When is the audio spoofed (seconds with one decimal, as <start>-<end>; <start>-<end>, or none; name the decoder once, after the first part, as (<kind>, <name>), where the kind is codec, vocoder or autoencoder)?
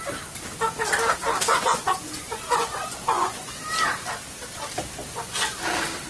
1.5-3.6 (vocoder, Vocos); 5.0-5.6